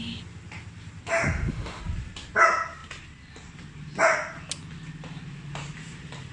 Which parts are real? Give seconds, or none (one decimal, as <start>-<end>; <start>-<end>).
0.0-1.1; 1.8-6.3